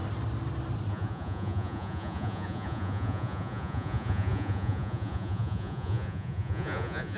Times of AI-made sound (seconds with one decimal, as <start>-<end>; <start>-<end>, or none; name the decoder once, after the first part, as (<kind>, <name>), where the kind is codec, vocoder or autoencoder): 0.9-7.2 (vocoder, Vocos)